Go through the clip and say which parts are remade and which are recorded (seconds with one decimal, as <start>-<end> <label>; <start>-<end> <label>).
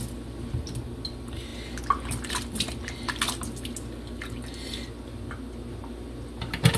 0.0-6.8 recorded